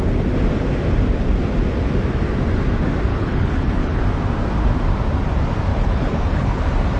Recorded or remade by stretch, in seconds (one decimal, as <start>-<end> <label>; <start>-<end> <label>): 0.0-3.1 recorded; 3.1-4.0 remade; 4.0-5.7 recorded; 5.7-6.6 remade; 6.6-7.0 recorded